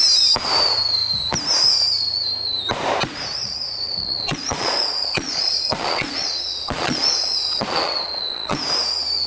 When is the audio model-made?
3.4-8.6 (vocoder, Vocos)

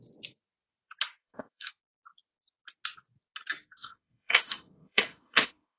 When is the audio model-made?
1.2-1.7 (autoencoder, DAC-VAE); 3.6-5.8

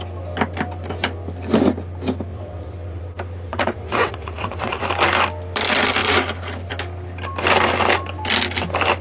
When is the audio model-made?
2.3-3.0 (vocoder, WaveNeXt); 3.5-4.8

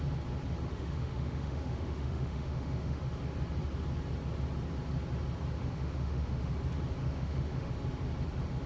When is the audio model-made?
0.7-3.0 (autoencoder, DAC-VAE); 5.6-6.5; 7.0-7.7

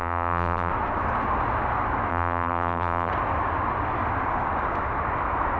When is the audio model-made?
0.0-0.7 (vocoder, BigVGAN v2); 2.1-3.1

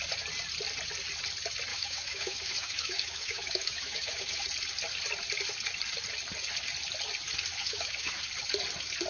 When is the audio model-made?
1.7-4.4 (autoencoder, DAC-VAE); 7.5-8.2